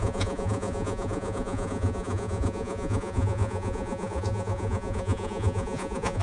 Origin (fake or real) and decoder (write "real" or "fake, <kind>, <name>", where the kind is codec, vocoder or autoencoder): fake, vocoder, Vocos